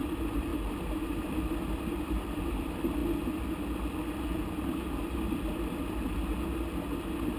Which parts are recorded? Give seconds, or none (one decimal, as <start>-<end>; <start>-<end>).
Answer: 3.0-7.4